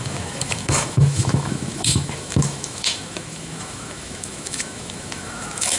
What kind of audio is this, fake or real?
fake